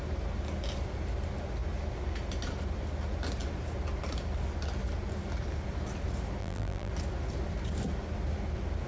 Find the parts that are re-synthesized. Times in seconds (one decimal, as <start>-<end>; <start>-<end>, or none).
6.4-6.9